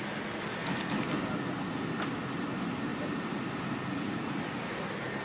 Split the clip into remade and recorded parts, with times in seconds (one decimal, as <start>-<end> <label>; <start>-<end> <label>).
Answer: 0.0-2.9 recorded; 2.9-4.8 remade; 4.8-5.2 recorded